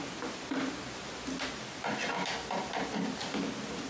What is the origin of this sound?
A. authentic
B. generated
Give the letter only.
A